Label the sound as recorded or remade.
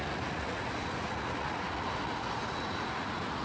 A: remade